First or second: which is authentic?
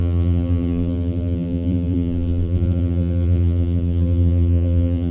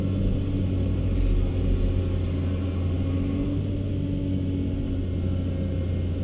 second